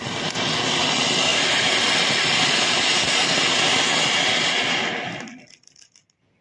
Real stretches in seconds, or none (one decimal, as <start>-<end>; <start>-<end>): 0.0-6.4